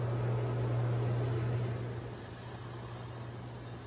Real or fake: real